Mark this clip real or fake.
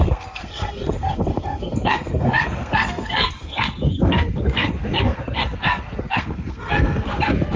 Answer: fake